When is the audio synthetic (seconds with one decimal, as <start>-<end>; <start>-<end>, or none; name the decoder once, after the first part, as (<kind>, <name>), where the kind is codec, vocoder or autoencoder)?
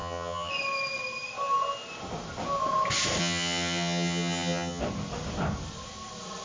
0.0-0.5 (vocoder, HiFi-GAN); 3.2-4.8